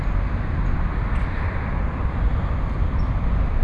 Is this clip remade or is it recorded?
recorded